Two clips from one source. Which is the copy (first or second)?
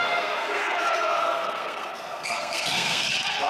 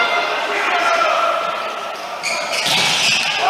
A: first